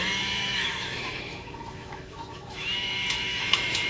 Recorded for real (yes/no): no